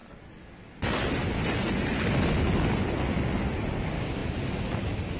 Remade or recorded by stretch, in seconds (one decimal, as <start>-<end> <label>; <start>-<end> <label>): 0.0-5.2 recorded